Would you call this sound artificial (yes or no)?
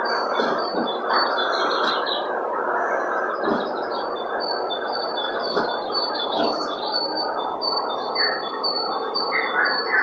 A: no